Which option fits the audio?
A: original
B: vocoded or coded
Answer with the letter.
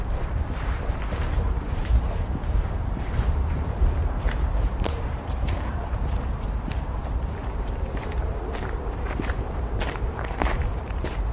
B